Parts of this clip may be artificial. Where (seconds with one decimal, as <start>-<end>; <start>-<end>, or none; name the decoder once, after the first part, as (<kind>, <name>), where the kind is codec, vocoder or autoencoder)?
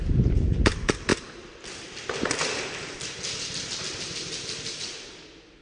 none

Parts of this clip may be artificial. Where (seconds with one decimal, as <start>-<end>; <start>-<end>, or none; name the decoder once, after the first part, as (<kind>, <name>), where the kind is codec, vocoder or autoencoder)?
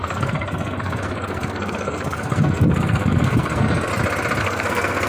0.0-3.9 (codec, SNAC); 4.4-5.1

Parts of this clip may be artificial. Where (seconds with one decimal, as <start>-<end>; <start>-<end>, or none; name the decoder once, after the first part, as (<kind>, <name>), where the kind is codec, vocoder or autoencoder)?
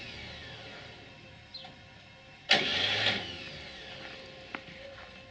none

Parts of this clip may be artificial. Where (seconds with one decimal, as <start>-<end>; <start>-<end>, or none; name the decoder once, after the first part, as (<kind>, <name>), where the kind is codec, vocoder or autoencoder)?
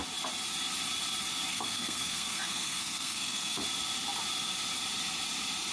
1.5-3.6 (codec, SNAC)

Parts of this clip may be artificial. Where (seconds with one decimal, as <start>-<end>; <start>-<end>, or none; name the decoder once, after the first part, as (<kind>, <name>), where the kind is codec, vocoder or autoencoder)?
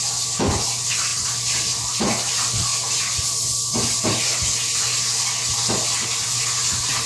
none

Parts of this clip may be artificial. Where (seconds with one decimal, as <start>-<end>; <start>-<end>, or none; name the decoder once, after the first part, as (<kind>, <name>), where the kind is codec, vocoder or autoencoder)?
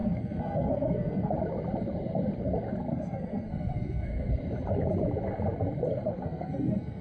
0.0-1.3 (codec, SNAC); 2.9-4.3; 6.0-7.0